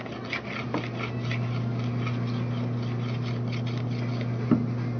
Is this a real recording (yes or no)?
yes